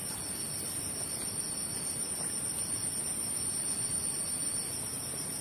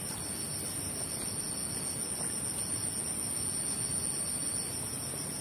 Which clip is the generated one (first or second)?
first